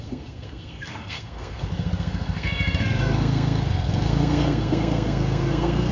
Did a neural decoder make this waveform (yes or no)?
yes